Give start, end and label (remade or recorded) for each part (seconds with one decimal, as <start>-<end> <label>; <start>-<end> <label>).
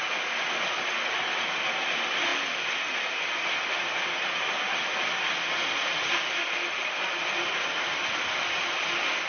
0.0-9.3 recorded